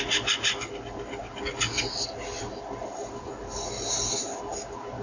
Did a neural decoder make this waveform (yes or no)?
no